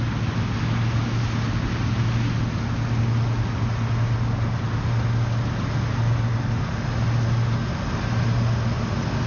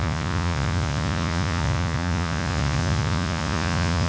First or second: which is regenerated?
second